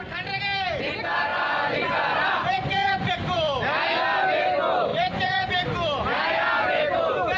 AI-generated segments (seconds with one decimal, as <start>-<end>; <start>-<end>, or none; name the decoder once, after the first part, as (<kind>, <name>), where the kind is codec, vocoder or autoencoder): 1.3-3.1 (vocoder, Vocos); 4.9-5.5